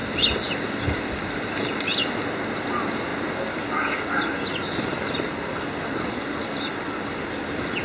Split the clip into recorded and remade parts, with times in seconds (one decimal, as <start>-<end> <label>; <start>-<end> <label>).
0.0-7.8 recorded

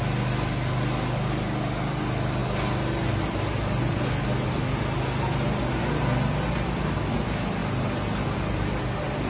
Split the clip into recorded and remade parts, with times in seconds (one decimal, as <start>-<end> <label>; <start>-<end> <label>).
0.0-9.3 recorded

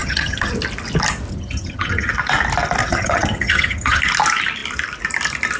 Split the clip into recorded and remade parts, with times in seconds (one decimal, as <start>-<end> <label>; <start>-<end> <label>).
0.0-0.5 remade; 0.5-1.3 recorded; 1.3-2.1 remade; 2.1-2.8 recorded; 2.8-4.0 remade; 4.0-5.6 recorded

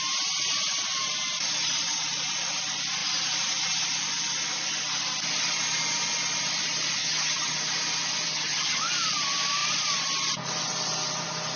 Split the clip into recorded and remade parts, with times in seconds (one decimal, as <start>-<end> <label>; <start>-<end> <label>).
0.0-7.0 recorded; 7.0-7.6 remade; 7.6-8.3 recorded; 8.3-8.8 remade; 8.8-11.6 recorded